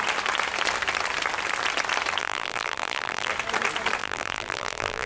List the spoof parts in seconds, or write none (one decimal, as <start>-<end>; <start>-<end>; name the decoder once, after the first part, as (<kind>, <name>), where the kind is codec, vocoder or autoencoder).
2.2-3.3 (vocoder, BigVGAN v2); 4.0-5.1